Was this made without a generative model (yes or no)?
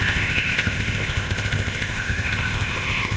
no